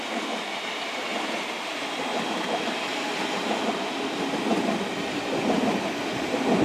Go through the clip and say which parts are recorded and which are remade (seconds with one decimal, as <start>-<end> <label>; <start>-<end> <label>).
0.0-6.6 recorded